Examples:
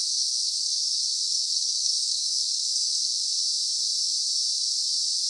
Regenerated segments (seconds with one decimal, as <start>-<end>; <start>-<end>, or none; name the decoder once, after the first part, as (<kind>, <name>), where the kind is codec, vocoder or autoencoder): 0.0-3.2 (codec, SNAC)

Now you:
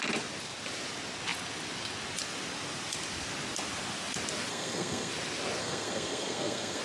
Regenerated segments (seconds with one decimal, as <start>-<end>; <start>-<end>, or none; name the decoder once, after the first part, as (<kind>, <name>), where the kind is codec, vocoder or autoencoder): 4.5-5.1 (codec, SNAC); 5.6-6.8

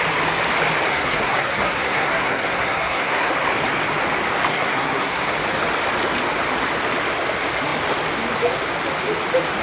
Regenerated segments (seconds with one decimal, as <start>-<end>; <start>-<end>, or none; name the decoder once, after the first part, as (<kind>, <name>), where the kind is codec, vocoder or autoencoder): 0.9-3.3 (codec, SNAC); 4.5-5.3

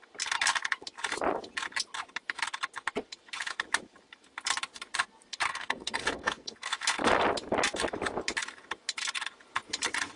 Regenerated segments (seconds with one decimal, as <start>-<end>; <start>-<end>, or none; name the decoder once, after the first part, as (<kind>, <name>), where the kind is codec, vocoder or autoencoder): 5.5-6.7 (codec, SNAC)

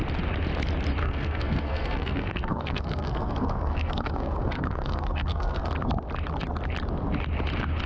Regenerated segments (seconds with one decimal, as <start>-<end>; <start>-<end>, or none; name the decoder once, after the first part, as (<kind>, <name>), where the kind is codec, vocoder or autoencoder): 1.0-5.7 (codec, SNAC)